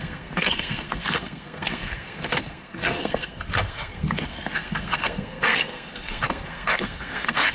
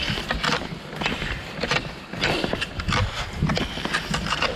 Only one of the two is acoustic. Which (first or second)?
second